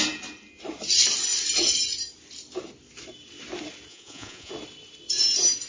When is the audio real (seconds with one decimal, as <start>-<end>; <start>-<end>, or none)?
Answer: 0.0-3.9; 4.5-5.7